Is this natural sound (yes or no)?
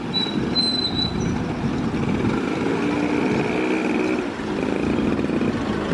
yes